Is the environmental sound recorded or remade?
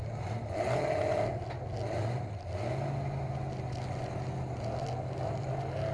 recorded